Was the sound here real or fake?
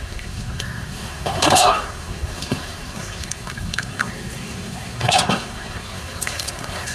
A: fake